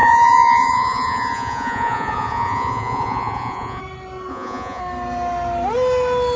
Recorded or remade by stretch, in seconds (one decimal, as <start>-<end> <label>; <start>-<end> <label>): 0.0-3.8 remade; 3.8-4.3 recorded; 4.3-4.8 remade; 4.8-6.4 recorded